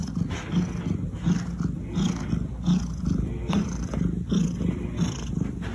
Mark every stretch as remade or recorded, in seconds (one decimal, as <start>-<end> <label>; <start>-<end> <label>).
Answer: 0.0-5.7 recorded